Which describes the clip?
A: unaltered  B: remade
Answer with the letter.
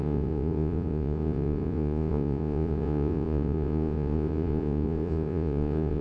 B